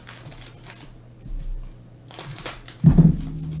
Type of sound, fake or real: real